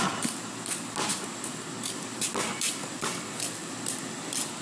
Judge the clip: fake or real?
real